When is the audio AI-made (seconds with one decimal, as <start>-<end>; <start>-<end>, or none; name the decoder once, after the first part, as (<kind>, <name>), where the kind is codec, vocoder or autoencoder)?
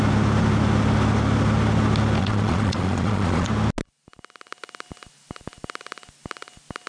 2.2-3.5 (vocoder, Vocos)